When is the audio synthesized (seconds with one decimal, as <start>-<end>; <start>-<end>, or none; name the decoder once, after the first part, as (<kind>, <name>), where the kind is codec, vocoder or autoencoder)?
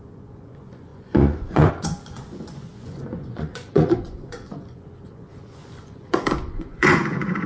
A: 0.0-7.5 (vocoder, Vocos)